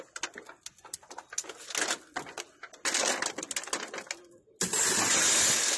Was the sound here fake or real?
real